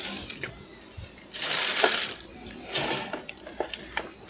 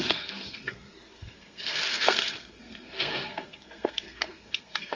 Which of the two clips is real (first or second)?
first